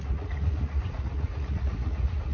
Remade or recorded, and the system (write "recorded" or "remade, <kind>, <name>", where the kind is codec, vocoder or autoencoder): remade, vocoder, Vocos